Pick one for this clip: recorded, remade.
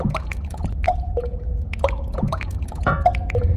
remade